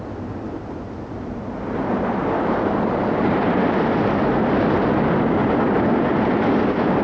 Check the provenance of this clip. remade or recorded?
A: recorded